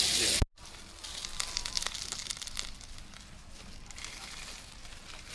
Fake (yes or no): no